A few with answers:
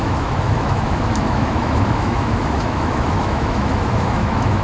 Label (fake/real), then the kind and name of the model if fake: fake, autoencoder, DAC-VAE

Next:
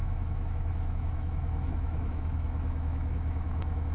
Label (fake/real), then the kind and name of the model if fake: fake, autoencoder, DAC-VAE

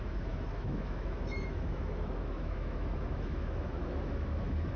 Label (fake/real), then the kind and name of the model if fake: fake, autoencoder, DAC-VAE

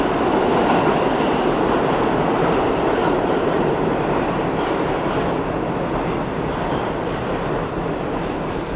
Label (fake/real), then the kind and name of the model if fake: real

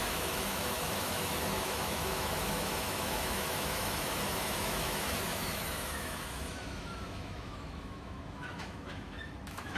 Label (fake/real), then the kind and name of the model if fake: fake, autoencoder, DAC-VAE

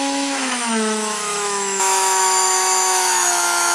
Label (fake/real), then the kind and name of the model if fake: fake, autoencoder, DAC-VAE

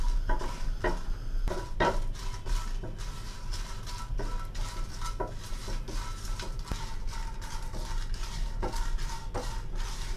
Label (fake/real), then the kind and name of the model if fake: real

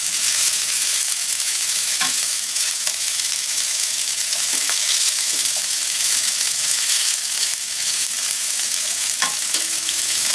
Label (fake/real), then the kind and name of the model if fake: fake, autoencoder, DAC-VAE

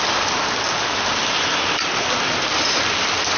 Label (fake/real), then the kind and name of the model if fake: real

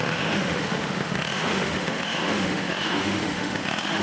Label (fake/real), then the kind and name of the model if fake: fake, autoencoder, DAC-VAE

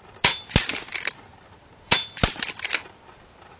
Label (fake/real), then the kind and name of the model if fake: real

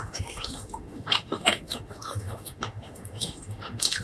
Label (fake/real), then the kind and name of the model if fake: fake, autoencoder, DAC-VAE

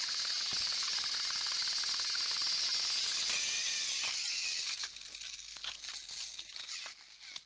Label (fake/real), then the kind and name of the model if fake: real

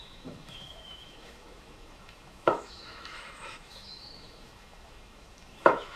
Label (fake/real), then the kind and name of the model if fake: fake, autoencoder, DAC-VAE